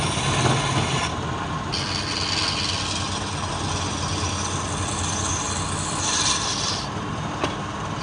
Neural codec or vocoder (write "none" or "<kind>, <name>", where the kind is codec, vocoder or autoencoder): none